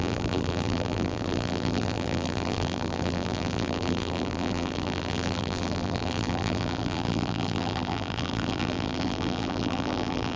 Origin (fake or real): fake